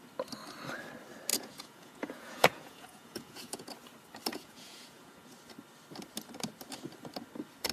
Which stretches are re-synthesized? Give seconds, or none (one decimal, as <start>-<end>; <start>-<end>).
1.3-3.7; 4.3-5.3